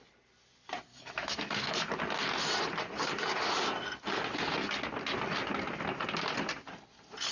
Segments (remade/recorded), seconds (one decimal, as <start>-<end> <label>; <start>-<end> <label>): 0.0-0.9 recorded; 0.9-1.9 remade; 1.9-7.3 recorded